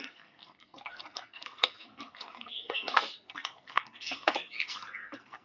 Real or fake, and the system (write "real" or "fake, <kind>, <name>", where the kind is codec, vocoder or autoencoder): fake, codec, SNAC